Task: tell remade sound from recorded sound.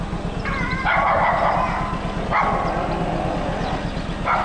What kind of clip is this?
recorded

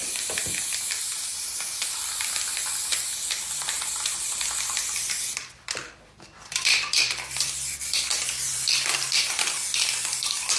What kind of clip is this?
remade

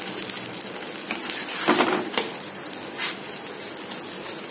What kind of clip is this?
recorded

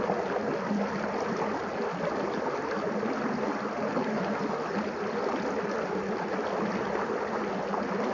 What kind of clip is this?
recorded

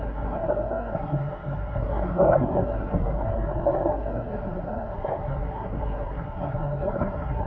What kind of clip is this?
remade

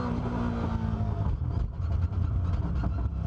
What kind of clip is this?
recorded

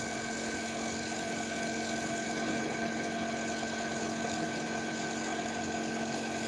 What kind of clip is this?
remade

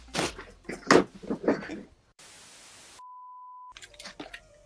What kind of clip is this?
recorded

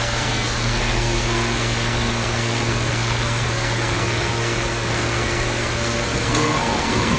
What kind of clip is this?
remade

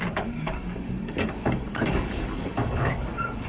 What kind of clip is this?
remade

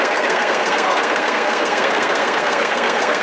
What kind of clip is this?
remade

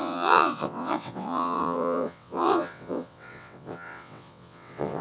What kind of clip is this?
remade